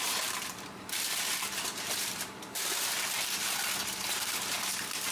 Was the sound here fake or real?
fake